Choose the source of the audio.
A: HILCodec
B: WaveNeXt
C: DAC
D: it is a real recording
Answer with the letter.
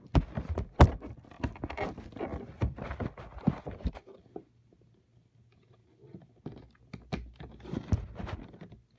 D